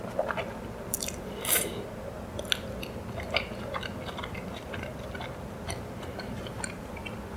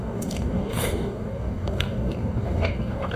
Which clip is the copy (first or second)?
second